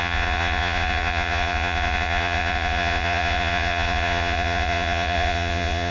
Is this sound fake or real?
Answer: fake